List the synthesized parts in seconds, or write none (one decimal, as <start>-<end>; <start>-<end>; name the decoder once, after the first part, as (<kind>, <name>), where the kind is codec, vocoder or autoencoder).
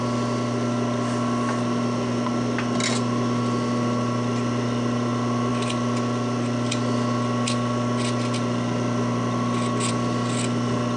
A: none